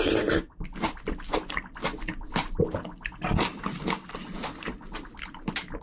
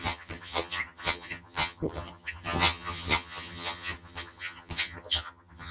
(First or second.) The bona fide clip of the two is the first